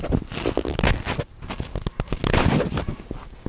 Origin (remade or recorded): recorded